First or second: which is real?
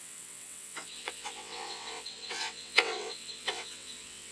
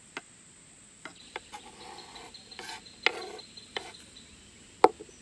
second